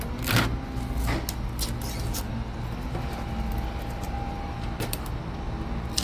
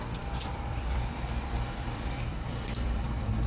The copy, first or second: second